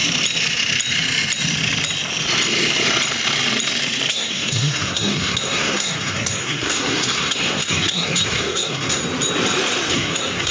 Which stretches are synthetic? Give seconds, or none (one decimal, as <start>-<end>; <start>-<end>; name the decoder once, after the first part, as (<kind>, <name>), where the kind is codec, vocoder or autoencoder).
4.1-9.0 (codec, SNAC); 9.9-10.5